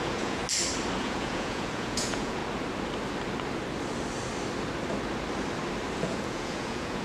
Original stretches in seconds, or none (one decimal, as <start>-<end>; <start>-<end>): 0.4-1.0; 2.4-6.0